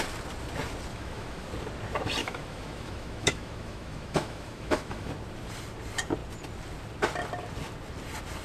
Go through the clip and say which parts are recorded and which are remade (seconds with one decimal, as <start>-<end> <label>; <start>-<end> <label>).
0.0-0.9 recorded; 0.9-1.5 remade; 1.5-2.2 recorded; 2.2-5.1 remade; 5.1-8.4 recorded